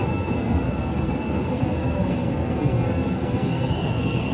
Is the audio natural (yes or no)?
no